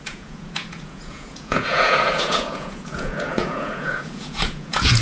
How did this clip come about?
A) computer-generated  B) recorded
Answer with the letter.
A